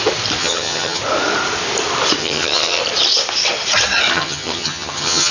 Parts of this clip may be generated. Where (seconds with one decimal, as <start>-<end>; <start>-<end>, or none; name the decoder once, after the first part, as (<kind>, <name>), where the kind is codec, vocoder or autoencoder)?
0.4-1.0 (vocoder, HiFi-GAN); 2.2-2.8; 4.1-5.3